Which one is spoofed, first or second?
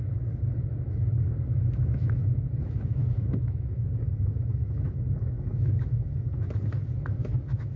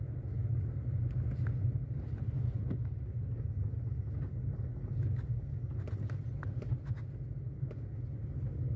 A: first